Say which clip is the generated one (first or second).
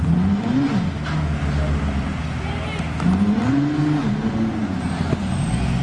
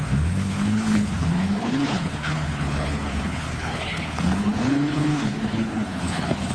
second